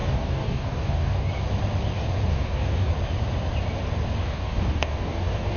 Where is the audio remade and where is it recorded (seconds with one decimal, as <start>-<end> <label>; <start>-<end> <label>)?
0.0-1.3 remade; 1.3-2.3 recorded; 2.3-2.9 remade; 2.9-4.2 recorded; 4.2-5.6 remade